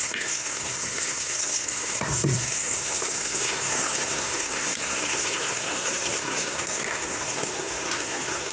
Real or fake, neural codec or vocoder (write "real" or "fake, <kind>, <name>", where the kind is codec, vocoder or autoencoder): fake, codec, SNAC